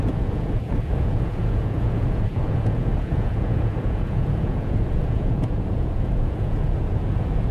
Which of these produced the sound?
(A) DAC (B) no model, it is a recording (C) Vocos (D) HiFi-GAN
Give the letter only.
C